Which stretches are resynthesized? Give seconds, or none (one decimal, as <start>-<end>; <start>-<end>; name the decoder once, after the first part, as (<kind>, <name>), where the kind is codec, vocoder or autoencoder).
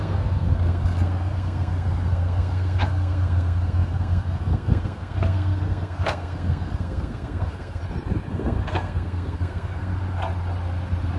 0.0-7.8 (codec, SNAC); 8.3-9.9